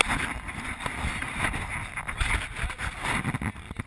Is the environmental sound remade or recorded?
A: recorded